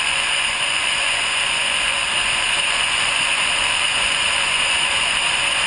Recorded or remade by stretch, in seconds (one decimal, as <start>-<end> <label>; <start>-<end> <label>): 0.0-5.7 remade